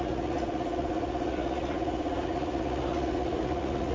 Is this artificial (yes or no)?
yes